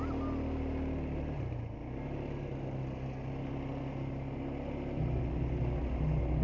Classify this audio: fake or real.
real